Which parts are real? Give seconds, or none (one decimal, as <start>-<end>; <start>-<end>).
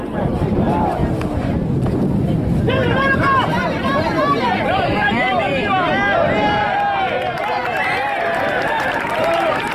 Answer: 1.0-2.7; 5.9-8.4